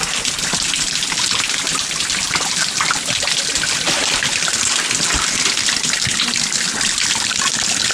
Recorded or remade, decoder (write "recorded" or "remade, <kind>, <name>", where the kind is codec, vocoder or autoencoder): remade, vocoder, BigVGAN v2